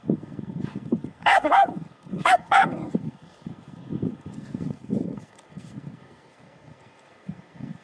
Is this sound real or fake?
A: fake